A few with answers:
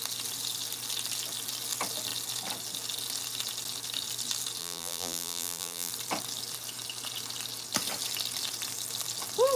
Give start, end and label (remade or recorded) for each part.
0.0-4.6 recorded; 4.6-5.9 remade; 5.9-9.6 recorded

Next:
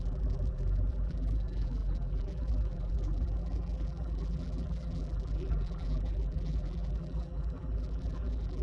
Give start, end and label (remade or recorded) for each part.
0.0-8.6 remade